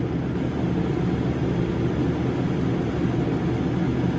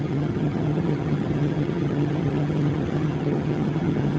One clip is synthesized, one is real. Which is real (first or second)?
first